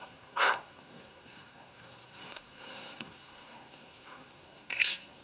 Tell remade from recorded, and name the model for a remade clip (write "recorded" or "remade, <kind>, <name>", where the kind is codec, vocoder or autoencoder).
remade, codec, SNAC